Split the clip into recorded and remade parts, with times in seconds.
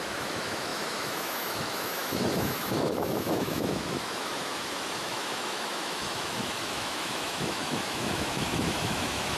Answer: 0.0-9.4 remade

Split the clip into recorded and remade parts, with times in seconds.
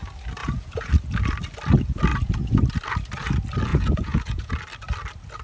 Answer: 0.0-0.4 recorded; 0.4-0.9 remade; 0.9-2.1 recorded; 2.1-2.6 remade; 2.6-3.7 recorded; 3.7-4.5 remade; 4.5-5.4 recorded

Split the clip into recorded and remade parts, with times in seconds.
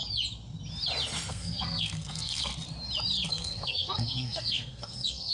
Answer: 0.0-1.3 recorded; 1.3-2.5 remade; 2.5-3.3 recorded; 3.3-5.3 remade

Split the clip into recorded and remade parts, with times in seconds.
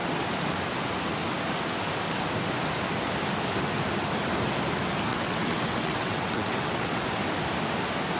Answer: 0.0-5.1 recorded; 5.1-7.0 remade; 7.0-8.2 recorded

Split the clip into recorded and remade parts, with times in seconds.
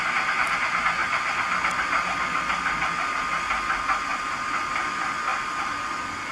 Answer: 0.0-6.3 recorded